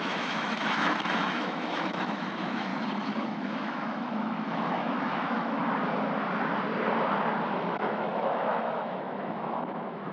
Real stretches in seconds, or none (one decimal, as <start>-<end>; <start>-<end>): 2.7-3.3; 5.6-7.5